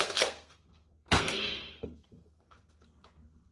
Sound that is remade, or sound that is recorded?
remade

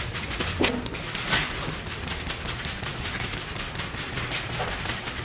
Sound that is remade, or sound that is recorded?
recorded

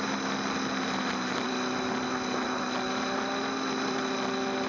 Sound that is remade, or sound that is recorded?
recorded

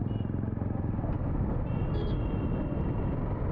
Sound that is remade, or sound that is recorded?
recorded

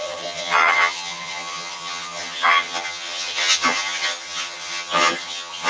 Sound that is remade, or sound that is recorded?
remade